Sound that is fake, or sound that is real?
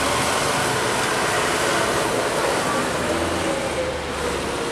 real